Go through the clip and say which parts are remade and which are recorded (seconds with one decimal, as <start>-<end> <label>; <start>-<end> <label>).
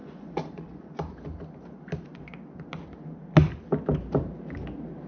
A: 0.0-0.9 remade; 0.9-5.1 recorded